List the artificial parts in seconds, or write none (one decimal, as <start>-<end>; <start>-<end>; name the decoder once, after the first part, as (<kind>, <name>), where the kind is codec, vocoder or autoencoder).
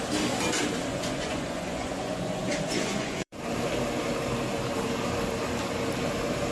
0.9-3.4 (vocoder, Vocos)